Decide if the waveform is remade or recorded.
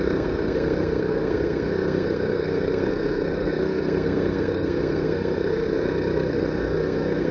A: remade